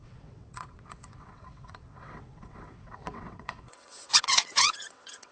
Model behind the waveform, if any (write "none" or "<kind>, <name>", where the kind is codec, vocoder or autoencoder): vocoder, WaveNeXt